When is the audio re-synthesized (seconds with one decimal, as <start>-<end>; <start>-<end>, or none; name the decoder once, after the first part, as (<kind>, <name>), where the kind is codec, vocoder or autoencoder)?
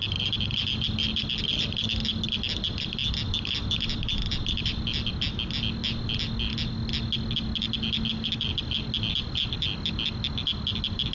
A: none